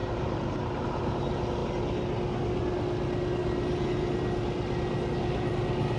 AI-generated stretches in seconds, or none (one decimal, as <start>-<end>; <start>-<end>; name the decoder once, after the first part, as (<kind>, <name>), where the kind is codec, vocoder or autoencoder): 0.0-0.8 (vocoder, BigVGAN v2)